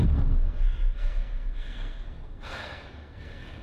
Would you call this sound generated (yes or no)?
yes